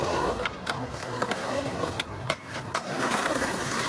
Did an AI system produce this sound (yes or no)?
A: yes